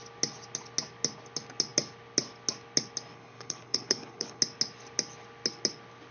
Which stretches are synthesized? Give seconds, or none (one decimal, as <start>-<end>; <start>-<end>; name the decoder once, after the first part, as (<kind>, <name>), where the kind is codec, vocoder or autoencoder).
3.1-4.4 (codec, HILCodec)